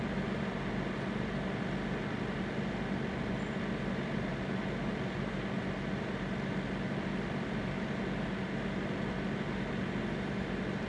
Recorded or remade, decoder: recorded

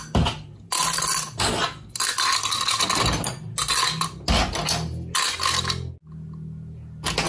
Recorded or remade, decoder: recorded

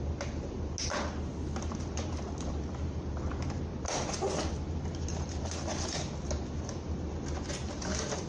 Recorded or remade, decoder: recorded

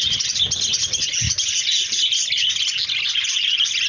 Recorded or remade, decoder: recorded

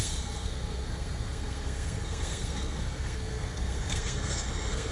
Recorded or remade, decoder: remade, codec, SNAC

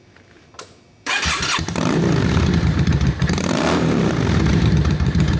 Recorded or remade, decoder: remade, vocoder, BigVGAN v2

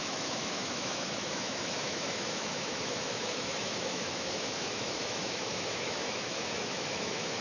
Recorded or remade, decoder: remade, autoencoder, DAC-VAE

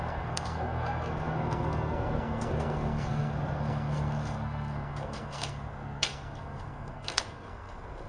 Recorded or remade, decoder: remade, codec, SNAC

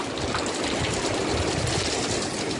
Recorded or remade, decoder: recorded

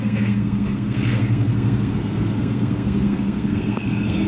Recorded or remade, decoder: remade, codec, SNAC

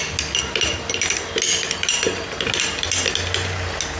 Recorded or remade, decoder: recorded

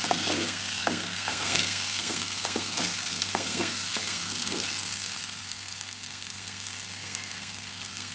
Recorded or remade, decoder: remade, codec, SNAC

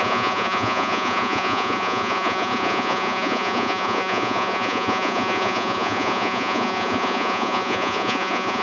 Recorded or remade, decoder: remade, vocoder, Vocos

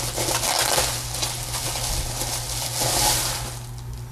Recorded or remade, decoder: recorded